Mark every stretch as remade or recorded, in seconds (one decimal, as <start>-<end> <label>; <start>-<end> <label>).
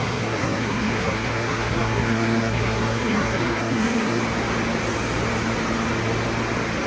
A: 0.0-4.2 remade; 4.2-6.9 recorded